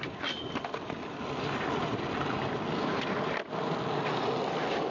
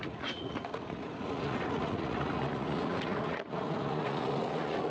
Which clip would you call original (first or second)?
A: first